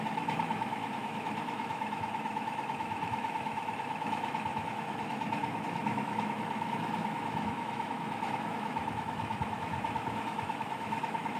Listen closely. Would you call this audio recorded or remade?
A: remade